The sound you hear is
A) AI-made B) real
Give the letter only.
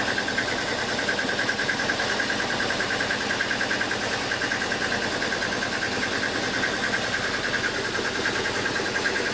B